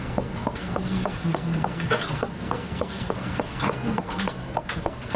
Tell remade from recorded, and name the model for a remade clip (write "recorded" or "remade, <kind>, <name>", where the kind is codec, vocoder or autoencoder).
remade, codec, SNAC